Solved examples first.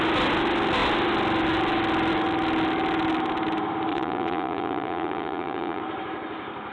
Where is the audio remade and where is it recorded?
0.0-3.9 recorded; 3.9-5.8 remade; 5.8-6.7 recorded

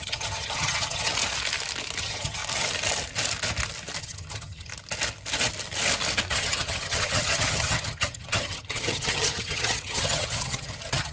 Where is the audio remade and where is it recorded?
0.0-1.1 remade; 1.1-2.0 recorded; 2.0-2.4 remade; 2.4-4.0 recorded; 4.0-4.7 remade; 4.7-6.3 recorded; 6.3-11.1 remade